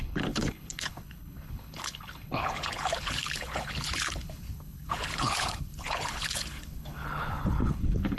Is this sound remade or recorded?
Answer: remade